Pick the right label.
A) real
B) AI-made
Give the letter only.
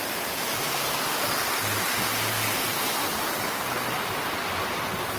A